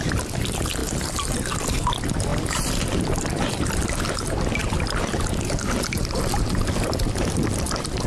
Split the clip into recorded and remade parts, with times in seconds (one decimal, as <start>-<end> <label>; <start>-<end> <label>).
0.0-8.1 recorded